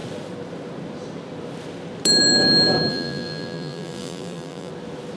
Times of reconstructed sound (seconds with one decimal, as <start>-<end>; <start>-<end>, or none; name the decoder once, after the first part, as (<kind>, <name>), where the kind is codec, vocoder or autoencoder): 2.9-4.7 (vocoder, BigVGAN v2)